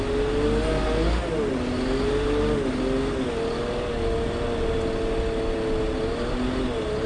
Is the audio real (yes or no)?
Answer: yes